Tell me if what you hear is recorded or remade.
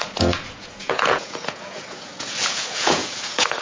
remade